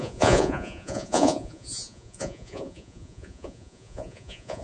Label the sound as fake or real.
fake